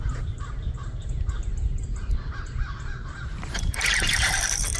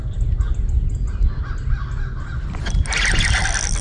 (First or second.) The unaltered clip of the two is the second